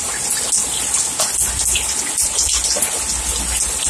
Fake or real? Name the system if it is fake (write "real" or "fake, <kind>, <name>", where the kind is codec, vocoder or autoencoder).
real